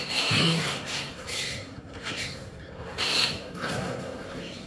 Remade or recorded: remade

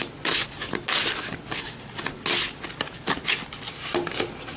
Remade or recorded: recorded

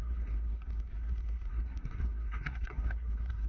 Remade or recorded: remade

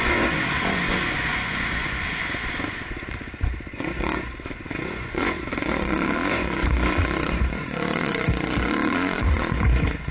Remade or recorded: remade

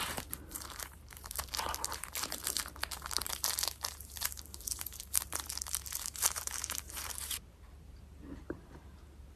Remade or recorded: remade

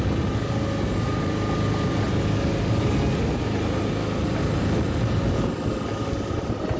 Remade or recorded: recorded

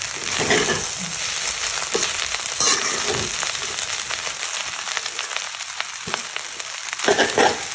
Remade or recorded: recorded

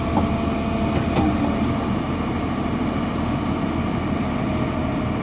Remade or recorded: recorded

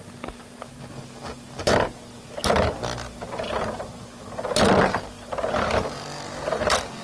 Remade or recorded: recorded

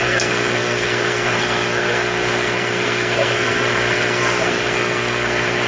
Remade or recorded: remade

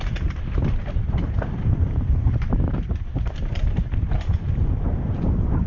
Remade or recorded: remade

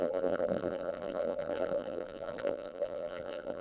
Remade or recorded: remade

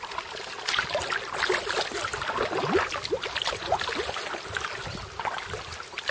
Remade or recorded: recorded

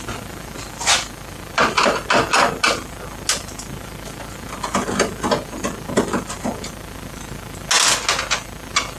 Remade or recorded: recorded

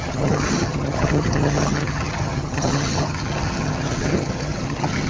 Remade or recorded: remade